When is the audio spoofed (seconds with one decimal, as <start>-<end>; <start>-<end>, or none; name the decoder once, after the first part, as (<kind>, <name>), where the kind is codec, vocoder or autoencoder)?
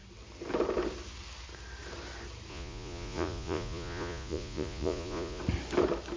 2.5-5.4 (vocoder, Vocos)